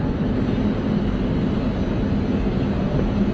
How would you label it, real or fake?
real